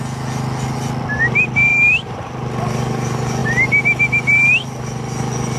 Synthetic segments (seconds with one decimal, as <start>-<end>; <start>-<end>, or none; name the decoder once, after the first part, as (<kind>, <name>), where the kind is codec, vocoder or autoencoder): 1.7-2.3 (vocoder, BigVGAN v2); 3.4-4.5